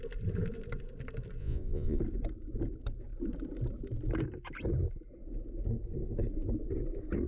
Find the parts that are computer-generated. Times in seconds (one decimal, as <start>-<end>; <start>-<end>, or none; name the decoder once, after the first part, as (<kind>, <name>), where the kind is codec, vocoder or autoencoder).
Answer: 1.4-2.0 (vocoder, Vocos)